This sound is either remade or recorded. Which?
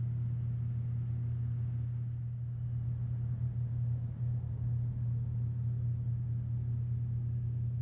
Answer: recorded